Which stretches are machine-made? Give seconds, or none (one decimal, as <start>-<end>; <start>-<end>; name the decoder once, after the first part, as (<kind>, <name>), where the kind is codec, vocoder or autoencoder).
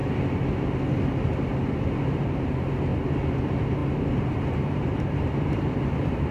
2.1-2.9 (vocoder, BigVGAN v2); 3.4-6.3